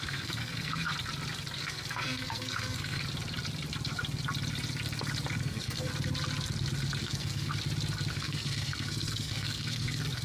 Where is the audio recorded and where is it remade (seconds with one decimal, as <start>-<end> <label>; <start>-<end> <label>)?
0.0-0.9 remade; 0.9-1.6 recorded; 1.6-3.0 remade; 3.0-5.4 recorded; 5.4-5.9 remade; 5.9-7.0 recorded; 7.0-7.5 remade; 7.5-8.1 recorded; 8.1-10.2 remade

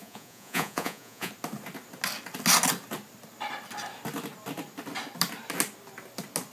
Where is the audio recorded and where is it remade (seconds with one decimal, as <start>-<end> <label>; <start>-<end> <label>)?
0.0-1.3 remade; 1.3-6.5 recorded